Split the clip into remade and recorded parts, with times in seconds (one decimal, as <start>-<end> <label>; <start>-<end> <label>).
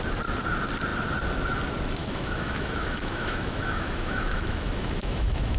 0.0-2.0 recorded; 2.0-5.6 remade